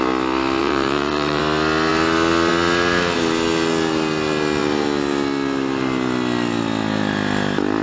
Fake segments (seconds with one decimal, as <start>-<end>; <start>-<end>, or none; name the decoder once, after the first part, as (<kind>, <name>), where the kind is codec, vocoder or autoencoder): 0.6-1.4 (vocoder, Vocos)